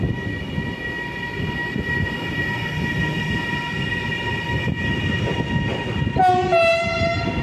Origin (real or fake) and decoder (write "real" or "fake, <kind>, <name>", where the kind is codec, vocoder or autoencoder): real